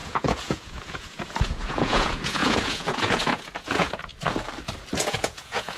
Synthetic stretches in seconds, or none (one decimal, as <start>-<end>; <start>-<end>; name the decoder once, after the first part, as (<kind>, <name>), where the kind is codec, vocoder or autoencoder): 0.0-4.1 (vocoder, Vocos); 5.0-5.8